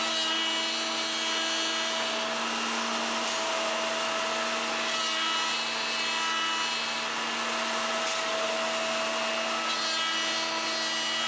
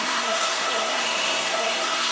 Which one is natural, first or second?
first